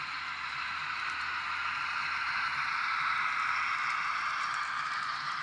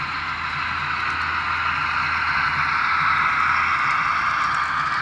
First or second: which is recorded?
second